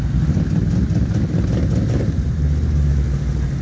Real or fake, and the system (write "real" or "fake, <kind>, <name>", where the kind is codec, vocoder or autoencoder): real